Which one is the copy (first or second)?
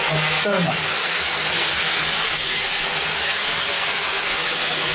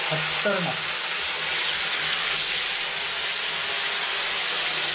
first